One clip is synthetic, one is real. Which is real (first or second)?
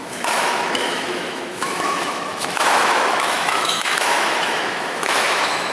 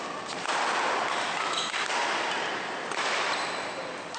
second